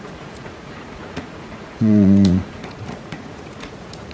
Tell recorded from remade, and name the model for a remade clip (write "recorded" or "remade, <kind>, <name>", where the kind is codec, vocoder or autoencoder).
remade, vocoder, Vocos